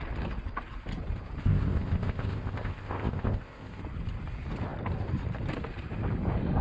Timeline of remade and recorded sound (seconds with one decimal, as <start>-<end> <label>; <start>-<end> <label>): 0.0-1.4 recorded; 1.4-3.8 remade; 3.8-6.6 recorded